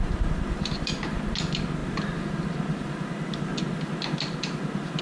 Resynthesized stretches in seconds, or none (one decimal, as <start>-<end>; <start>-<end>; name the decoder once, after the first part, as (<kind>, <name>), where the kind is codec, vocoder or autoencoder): none